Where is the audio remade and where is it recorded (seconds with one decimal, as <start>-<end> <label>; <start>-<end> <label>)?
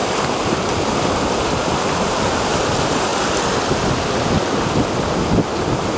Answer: 0.0-1.9 recorded; 1.9-3.1 remade; 3.1-6.0 recorded